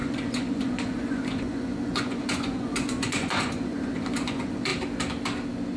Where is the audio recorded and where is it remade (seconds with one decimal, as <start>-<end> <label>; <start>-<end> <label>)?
0.0-4.7 remade; 4.7-5.8 recorded